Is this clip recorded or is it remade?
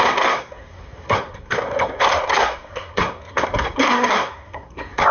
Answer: remade